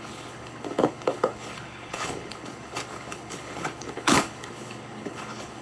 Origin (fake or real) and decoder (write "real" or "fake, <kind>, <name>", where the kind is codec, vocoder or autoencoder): fake, codec, HILCodec